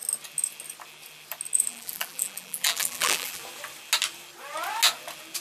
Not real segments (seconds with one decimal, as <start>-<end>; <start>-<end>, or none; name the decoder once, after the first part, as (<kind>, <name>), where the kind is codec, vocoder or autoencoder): 1.7-3.4 (vocoder, BigVGAN v2)